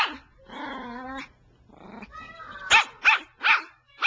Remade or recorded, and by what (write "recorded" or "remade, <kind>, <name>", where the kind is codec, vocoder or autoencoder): recorded